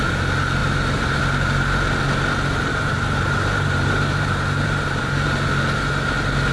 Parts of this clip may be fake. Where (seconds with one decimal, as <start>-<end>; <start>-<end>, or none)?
0.6-1.2; 2.7-5.5